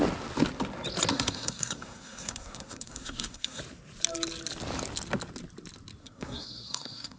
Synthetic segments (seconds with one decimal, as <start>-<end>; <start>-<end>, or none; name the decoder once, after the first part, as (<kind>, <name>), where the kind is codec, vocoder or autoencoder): 1.1-3.6 (codec, SNAC); 6.0-7.2